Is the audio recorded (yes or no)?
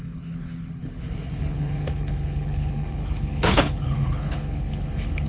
no